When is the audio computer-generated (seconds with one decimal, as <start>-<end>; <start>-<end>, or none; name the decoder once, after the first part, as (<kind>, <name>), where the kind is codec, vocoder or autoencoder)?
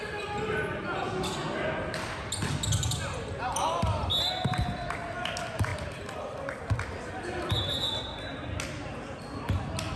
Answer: 5.7-6.6 (vocoder, BigVGAN v2)